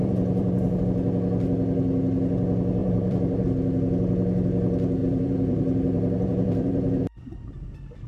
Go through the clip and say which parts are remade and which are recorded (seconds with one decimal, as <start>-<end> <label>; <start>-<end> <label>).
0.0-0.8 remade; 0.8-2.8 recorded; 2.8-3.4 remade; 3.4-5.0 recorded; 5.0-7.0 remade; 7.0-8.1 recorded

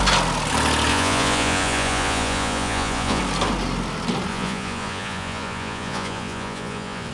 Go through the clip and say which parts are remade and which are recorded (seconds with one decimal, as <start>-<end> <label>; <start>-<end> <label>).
0.0-0.9 recorded; 0.9-3.2 remade; 3.2-4.3 recorded; 4.3-7.1 remade

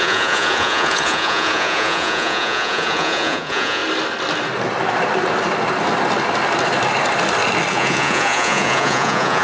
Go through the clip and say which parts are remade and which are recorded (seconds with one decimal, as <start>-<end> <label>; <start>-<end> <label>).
0.0-3.8 remade; 3.8-7.7 recorded; 7.7-9.4 remade